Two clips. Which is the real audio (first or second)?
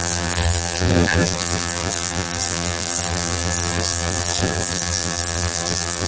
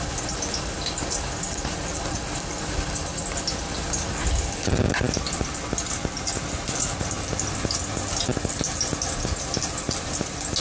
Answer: second